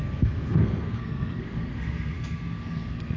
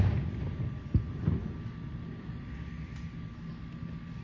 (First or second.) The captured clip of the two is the second